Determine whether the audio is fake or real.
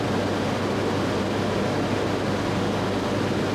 real